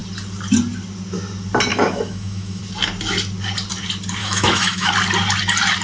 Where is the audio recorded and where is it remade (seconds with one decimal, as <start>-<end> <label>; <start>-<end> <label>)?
0.0-1.7 recorded; 1.7-2.6 remade; 2.6-4.2 recorded; 4.2-4.9 remade; 4.9-5.8 recorded